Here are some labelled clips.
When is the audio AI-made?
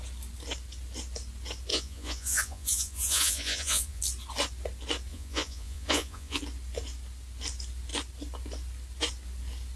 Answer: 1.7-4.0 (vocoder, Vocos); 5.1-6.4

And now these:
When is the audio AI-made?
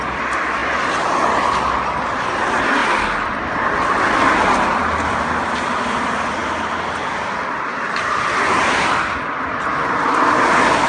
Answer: none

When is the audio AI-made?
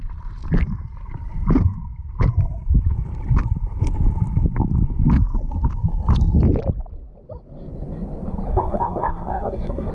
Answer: 8.5-9.9 (codec, SNAC)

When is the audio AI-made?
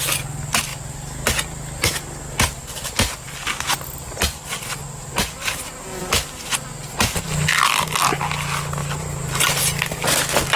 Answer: none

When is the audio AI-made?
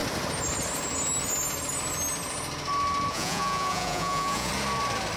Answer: 3.1-4.5 (vocoder, Vocos)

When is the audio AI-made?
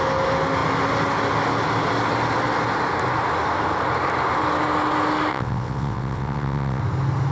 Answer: 5.3-6.8 (vocoder, WaveNeXt)